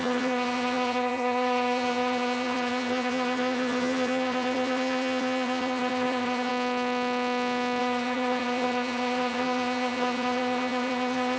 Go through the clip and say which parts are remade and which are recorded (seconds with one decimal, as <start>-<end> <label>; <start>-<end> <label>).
0.0-6.5 remade; 6.5-7.8 recorded; 7.8-11.4 remade